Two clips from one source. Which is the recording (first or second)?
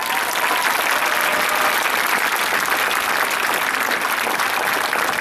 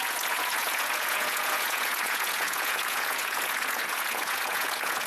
first